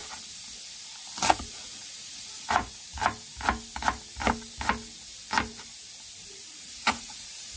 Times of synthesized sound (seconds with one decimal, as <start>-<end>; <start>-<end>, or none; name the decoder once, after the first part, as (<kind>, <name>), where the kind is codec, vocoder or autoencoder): 1.5-3.0 (vocoder, Vocos); 6.3-7.6